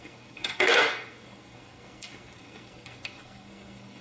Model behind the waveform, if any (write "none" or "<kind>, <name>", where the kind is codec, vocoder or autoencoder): codec, SNAC